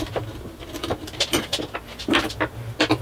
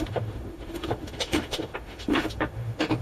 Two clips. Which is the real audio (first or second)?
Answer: first